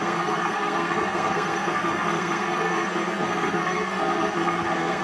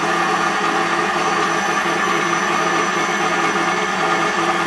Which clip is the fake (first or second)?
first